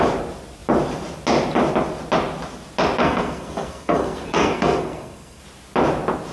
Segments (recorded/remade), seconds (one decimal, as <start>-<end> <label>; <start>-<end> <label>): 0.0-3.0 recorded; 3.0-5.4 remade; 5.4-6.3 recorded